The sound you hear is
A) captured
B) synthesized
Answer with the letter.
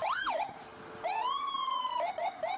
A